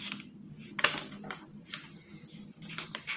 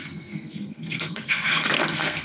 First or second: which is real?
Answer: first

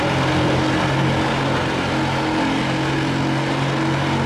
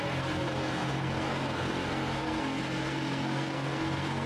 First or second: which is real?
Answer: first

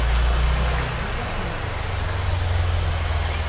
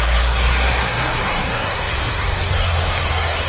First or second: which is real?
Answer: first